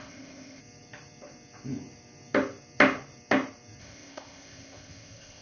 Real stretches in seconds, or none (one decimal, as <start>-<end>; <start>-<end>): 0.6-3.8